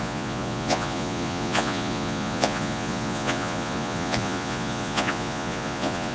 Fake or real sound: fake